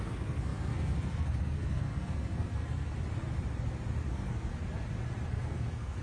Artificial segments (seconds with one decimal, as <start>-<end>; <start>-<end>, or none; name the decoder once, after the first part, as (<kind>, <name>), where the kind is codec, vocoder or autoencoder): 0.0-2.9 (codec, SNAC); 4.1-4.5; 5.3-6.0